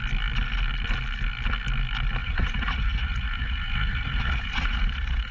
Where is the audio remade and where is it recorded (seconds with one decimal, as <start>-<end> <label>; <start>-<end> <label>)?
0.0-2.2 recorded; 2.2-5.3 remade